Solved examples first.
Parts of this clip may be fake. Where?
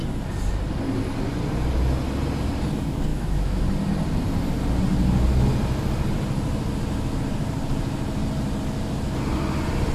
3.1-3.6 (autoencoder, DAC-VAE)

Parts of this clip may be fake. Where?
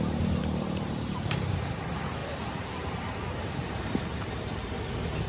0.4-1.6 (vocoder, BigVGAN v2); 2.2-4.7